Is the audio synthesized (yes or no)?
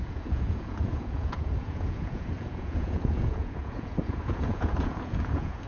yes